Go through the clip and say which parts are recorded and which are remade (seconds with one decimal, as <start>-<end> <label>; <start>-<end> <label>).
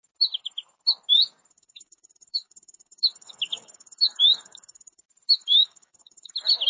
0.0-1.5 recorded; 1.5-5.0 remade; 5.0-5.4 recorded; 5.4-6.3 remade; 6.3-6.7 recorded